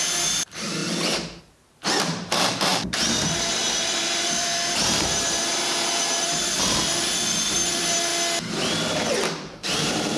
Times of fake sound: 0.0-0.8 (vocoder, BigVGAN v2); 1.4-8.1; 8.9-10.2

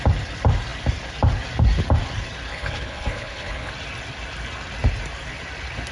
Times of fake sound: 2.5-3.7 (codec, HILCodec)